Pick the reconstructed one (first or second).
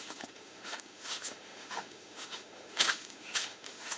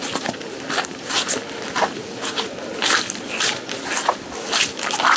first